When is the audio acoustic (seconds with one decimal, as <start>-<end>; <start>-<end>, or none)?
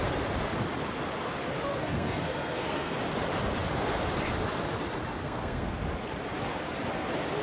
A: 0.0-1.7; 3.0-5.2; 5.8-7.4